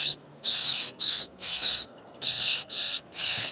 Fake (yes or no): yes